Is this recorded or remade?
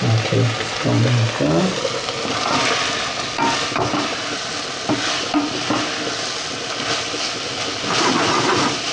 recorded